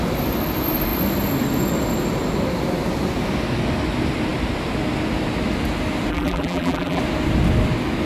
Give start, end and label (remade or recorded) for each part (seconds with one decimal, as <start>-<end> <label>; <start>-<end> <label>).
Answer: 0.0-6.1 recorded; 6.1-7.0 remade; 7.0-8.1 recorded